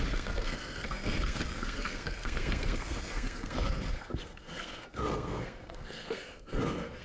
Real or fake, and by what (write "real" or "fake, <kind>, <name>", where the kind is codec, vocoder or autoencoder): fake, codec, SNAC